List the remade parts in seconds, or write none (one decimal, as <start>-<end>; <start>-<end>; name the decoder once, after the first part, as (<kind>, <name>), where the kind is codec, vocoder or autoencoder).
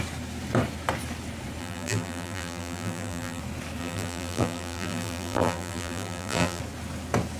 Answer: 1.6-3.4 (vocoder, BigVGAN v2); 3.8-6.6